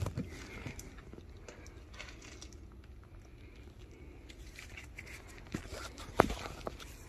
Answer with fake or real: real